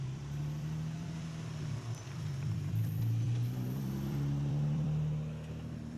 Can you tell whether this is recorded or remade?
remade